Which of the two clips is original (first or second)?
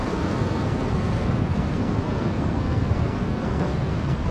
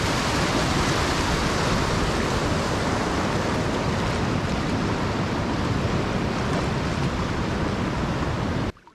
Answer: second